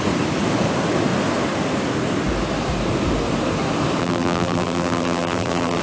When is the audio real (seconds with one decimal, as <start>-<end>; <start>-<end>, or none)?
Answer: 0.0-4.0